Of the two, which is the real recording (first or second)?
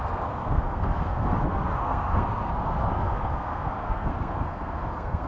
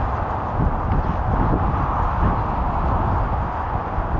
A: second